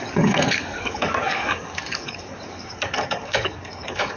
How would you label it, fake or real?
fake